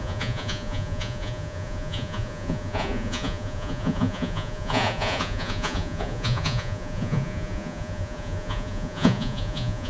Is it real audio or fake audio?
fake